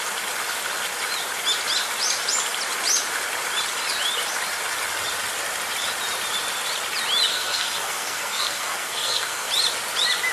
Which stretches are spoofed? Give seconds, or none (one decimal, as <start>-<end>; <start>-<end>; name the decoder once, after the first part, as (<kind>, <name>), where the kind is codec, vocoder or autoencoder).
7.3-9.5 (codec, SNAC)